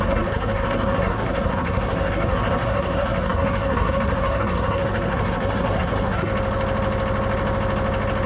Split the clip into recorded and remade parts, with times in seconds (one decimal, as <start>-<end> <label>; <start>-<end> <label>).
0.0-6.3 remade; 6.3-8.3 recorded